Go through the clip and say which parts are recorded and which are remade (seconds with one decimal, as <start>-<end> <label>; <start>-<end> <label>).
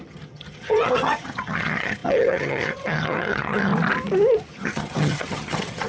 0.0-3.7 remade; 3.7-4.5 recorded; 4.5-5.9 remade